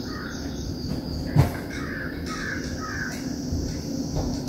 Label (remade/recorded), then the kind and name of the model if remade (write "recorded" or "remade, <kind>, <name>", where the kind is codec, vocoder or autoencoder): recorded